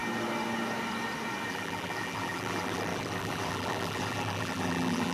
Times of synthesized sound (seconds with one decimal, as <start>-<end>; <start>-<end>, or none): 1.5-5.1

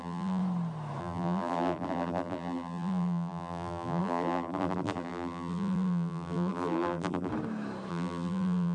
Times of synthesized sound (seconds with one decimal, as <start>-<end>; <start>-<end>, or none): 0.0-0.4; 1.0-7.3; 7.9-8.7

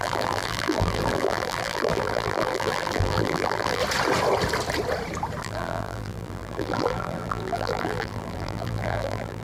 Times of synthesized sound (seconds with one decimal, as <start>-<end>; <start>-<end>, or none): 0.0-3.8; 5.4-9.4

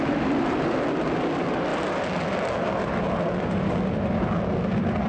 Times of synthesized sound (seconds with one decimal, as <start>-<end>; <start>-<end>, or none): none

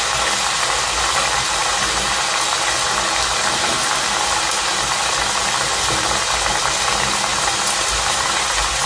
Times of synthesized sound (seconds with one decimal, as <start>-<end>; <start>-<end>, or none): 7.3-8.9

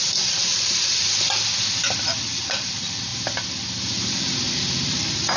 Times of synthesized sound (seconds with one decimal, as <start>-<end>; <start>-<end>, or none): 0.0-1.0; 2.3-3.1; 4.5-5.4

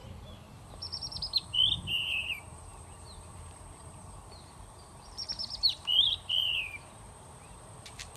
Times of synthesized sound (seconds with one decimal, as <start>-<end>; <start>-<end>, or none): 2.0-8.2

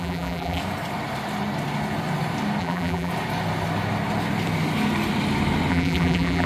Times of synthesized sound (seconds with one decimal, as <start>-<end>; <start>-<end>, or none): 0.0-0.6; 2.6-3.1; 5.7-6.5